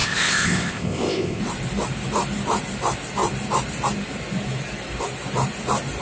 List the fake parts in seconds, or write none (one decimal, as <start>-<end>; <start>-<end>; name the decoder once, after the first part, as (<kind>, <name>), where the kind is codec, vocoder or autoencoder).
0.0-1.4 (codec, ZipCodec)